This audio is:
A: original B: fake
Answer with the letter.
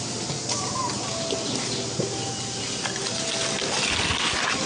A